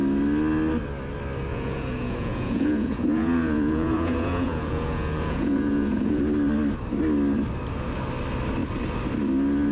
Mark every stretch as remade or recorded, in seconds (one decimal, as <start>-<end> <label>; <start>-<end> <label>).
0.0-1.5 recorded; 1.5-6.2 remade; 6.2-9.7 recorded